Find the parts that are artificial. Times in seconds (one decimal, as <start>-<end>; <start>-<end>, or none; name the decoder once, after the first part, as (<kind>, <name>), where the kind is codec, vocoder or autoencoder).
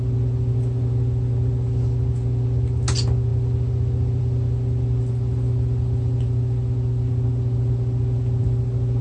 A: none